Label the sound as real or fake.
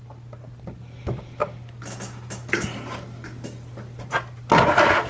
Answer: real